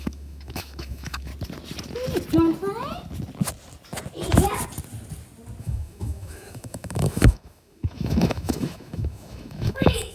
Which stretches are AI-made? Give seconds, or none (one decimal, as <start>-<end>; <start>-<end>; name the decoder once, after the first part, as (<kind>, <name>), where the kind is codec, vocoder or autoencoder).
0.0-1.3 (autoencoder, DAC-VAE); 5.6-10.1